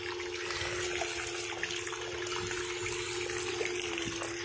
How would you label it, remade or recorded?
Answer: recorded